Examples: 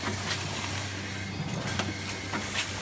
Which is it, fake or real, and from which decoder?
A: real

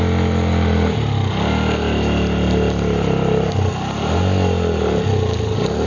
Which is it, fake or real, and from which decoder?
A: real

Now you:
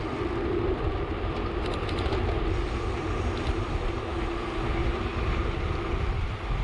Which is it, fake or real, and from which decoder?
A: real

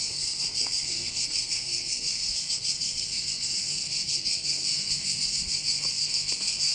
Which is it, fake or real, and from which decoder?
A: fake, codec, SNAC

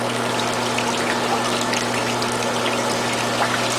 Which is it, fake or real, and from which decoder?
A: real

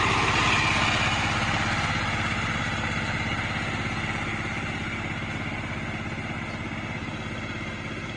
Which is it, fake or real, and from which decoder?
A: real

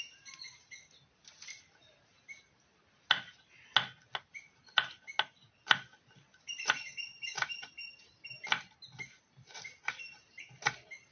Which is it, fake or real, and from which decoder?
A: real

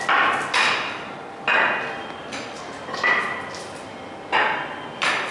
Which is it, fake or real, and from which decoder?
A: real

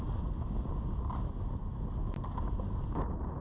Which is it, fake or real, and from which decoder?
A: real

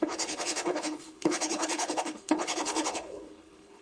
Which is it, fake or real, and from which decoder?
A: fake, codec, HILCodec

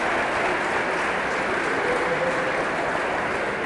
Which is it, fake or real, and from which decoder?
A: real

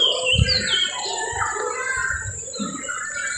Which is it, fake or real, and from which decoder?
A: fake, vocoder, BigVGAN v2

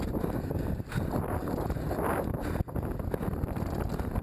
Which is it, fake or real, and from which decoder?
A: real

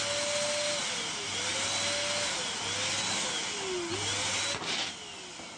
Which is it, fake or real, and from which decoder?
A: real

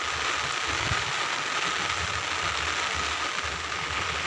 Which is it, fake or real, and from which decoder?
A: real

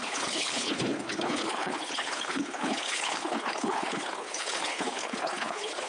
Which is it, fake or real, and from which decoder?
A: fake, codec, HILCodec